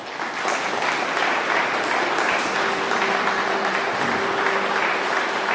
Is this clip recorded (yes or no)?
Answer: yes